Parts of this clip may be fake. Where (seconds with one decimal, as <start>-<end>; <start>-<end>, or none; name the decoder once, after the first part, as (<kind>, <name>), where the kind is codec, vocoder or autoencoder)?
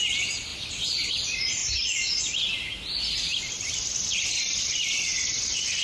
none